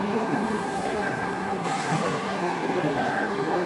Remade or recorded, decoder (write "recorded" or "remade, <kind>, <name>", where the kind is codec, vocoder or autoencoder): remade, codec, SNAC